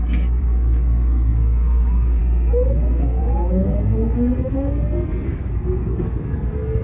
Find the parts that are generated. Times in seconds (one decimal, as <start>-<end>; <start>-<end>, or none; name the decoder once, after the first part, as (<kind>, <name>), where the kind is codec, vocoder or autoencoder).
0.0-6.8 (codec, SNAC)